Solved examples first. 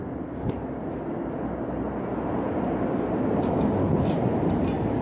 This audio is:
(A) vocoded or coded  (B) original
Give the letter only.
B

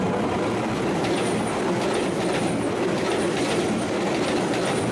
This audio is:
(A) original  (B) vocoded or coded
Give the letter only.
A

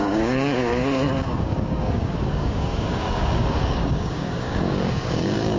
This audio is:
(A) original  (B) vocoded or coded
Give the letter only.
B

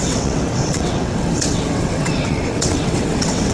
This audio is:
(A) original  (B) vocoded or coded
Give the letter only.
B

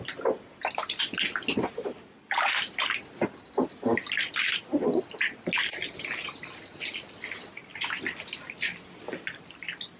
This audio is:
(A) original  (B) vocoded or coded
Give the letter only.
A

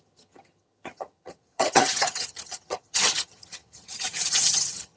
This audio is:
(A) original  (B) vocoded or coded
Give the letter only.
B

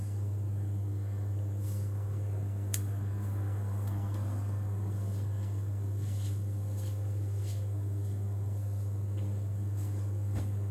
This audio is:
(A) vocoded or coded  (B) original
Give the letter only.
A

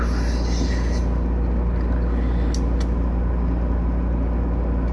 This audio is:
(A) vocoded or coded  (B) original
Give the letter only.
B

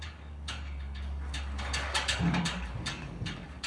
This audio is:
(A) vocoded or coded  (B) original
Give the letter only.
A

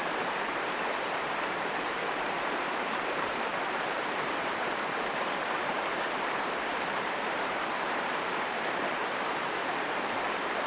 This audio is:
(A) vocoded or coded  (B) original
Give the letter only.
A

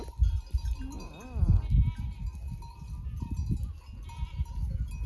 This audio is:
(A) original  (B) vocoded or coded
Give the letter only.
A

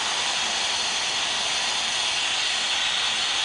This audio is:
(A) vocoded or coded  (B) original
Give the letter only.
B